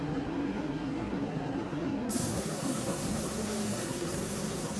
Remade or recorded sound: remade